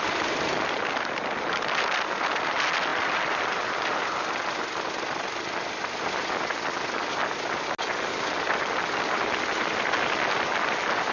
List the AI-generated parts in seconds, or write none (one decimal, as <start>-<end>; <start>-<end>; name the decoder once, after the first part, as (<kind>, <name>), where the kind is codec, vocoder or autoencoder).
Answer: none